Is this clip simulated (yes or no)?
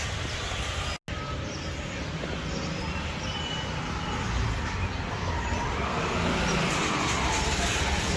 no